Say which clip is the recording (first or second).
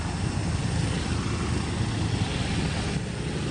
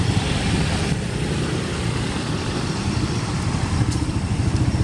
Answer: first